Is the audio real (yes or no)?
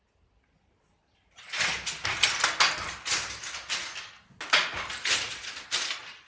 yes